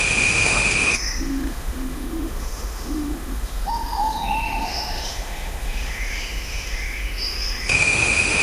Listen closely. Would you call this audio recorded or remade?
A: remade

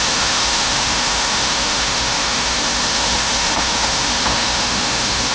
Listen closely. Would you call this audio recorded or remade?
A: remade